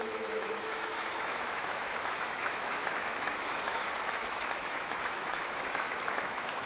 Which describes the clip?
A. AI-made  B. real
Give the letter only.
A